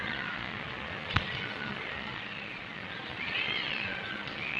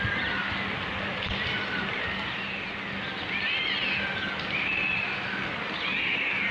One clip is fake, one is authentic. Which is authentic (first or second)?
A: second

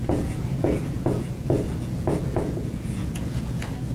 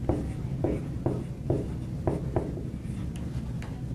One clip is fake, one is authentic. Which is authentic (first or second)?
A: second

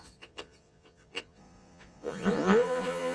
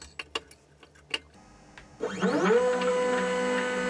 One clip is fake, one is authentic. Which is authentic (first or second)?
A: second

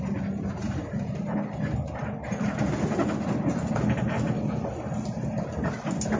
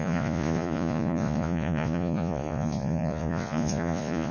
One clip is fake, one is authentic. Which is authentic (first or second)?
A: first